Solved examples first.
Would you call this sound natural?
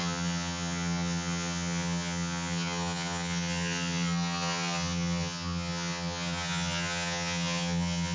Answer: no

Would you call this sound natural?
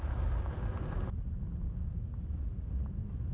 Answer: yes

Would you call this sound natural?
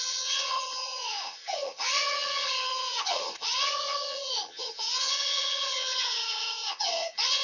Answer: no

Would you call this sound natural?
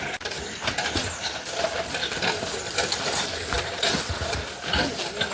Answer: yes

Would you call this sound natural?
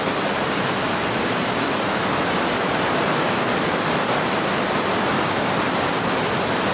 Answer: yes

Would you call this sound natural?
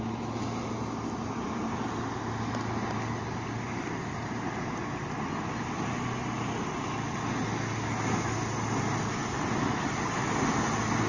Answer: yes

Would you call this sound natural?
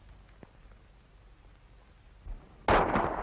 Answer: yes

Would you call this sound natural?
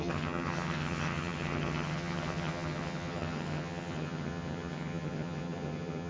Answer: no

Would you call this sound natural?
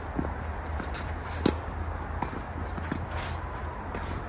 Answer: yes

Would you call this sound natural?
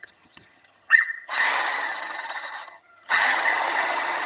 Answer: no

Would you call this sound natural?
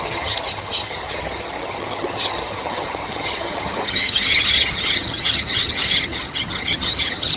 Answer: no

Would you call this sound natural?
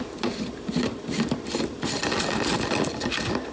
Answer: yes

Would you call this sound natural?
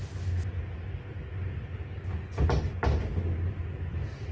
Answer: yes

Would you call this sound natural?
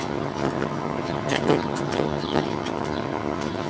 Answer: no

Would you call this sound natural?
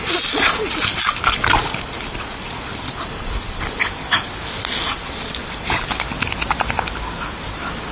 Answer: yes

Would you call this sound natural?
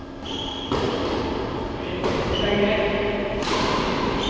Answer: yes